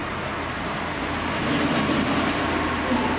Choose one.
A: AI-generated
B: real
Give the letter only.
B